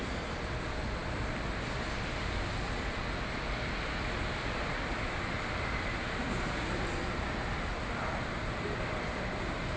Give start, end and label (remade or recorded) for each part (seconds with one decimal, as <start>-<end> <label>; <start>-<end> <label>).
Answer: 0.0-9.8 recorded